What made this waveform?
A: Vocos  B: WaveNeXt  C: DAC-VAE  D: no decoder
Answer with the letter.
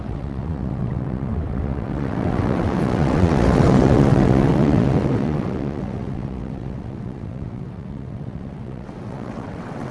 B